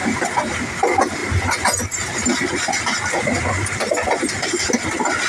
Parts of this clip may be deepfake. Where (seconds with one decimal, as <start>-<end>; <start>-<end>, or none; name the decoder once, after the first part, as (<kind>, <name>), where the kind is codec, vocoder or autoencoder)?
none